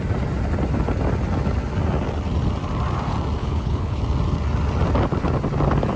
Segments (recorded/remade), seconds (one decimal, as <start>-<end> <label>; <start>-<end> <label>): 0.0-3.4 recorded; 3.4-4.0 remade; 4.0-6.0 recorded

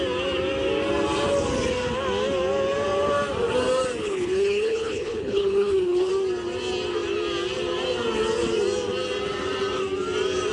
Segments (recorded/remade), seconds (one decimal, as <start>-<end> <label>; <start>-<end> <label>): 0.0-4.0 recorded; 4.0-6.1 remade; 6.1-10.5 recorded

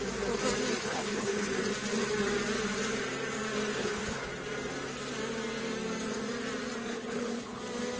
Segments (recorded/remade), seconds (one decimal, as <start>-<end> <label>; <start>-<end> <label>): 0.0-0.8 recorded; 0.8-1.5 remade; 1.5-3.7 recorded; 3.7-4.3 remade; 4.3-6.9 recorded; 6.9-7.6 remade; 7.6-8.0 recorded

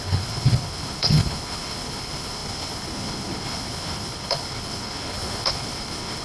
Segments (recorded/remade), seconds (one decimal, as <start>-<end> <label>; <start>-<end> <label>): 0.0-6.2 remade

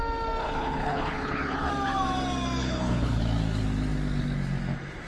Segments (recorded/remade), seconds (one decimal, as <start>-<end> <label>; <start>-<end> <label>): 0.0-0.4 recorded; 0.4-1.7 remade; 1.7-2.6 recorded; 2.6-3.2 remade; 3.2-5.1 recorded

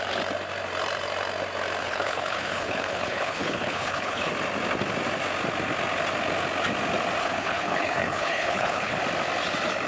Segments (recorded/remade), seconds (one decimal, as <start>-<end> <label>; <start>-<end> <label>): 0.0-1.8 recorded; 1.8-4.3 remade; 4.3-7.2 recorded; 7.2-9.0 remade; 9.0-9.9 recorded

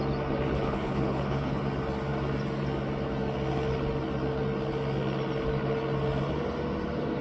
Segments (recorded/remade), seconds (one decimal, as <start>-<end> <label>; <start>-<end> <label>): 0.0-0.5 recorded; 0.5-1.6 remade; 1.6-7.2 recorded

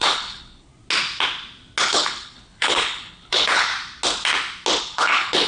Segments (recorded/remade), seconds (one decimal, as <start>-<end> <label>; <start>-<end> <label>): 0.0-0.7 remade; 0.7-1.8 recorded; 1.8-3.7 remade; 3.7-4.8 recorded; 4.8-5.5 remade